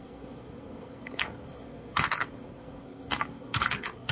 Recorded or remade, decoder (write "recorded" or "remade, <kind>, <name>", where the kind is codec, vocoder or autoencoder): remade, codec, SNAC